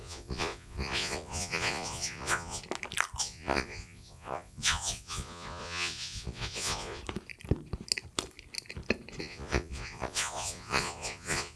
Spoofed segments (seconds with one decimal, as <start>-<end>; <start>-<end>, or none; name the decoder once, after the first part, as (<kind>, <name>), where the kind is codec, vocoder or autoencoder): 0.0-2.6 (vocoder, Vocos); 3.2-7.0; 9.2-11.6